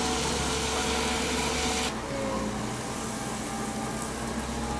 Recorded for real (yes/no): yes